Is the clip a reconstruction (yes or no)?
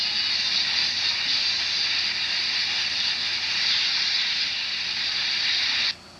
no